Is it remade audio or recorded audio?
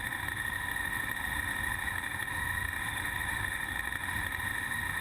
remade